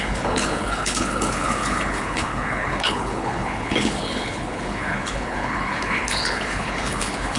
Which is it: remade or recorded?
remade